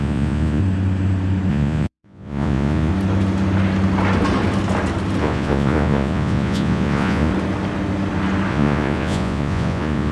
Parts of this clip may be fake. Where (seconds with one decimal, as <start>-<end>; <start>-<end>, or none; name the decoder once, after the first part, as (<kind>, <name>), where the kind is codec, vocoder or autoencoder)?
0.0-0.6 (vocoder, Vocos); 1.5-2.9; 5.2-7.3; 8.5-10.1